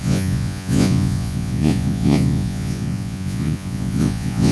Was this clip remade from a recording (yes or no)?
yes